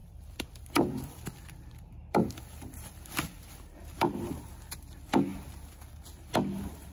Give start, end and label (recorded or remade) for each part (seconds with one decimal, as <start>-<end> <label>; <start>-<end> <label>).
0.0-1.2 remade; 1.2-2.0 recorded; 2.0-3.9 remade; 3.9-6.9 recorded